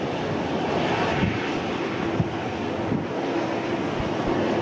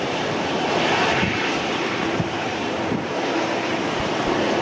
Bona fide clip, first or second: first